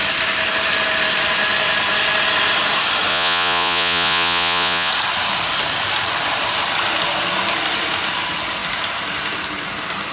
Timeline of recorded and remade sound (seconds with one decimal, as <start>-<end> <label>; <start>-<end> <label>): 0.0-3.1 recorded; 3.1-4.9 remade; 4.9-10.1 recorded